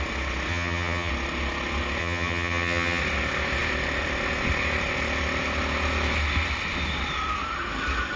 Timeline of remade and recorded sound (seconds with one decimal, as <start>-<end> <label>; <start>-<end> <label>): 0.0-0.5 recorded; 0.5-1.1 remade; 1.1-2.0 recorded; 2.0-3.0 remade; 3.0-8.2 recorded